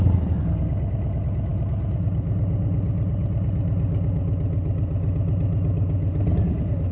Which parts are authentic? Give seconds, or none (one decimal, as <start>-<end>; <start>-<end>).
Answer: 0.0-6.9